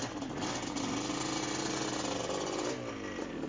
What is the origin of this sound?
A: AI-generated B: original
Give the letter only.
B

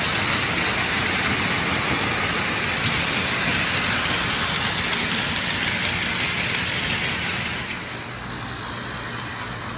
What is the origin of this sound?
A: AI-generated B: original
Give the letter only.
B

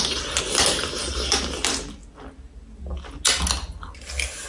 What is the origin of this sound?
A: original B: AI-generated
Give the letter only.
A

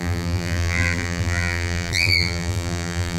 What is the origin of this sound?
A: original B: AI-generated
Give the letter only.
B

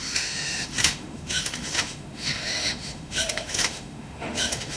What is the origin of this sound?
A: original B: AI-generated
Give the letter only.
B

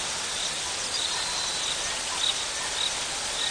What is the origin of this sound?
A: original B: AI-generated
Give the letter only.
A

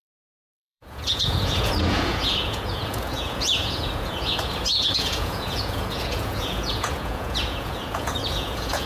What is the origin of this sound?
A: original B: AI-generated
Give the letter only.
B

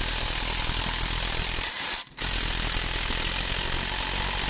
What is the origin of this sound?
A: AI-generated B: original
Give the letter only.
B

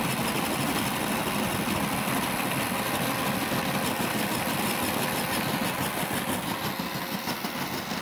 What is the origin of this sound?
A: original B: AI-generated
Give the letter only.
A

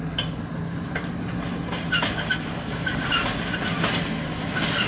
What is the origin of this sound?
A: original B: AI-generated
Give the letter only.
A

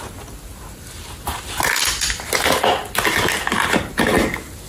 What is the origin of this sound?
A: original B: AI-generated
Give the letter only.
A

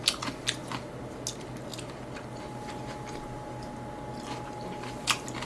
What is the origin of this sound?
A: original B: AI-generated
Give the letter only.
A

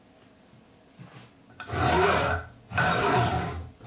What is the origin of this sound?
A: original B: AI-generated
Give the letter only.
A